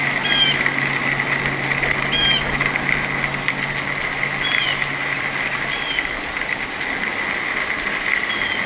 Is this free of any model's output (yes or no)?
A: yes